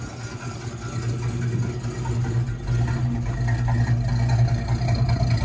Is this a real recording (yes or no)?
yes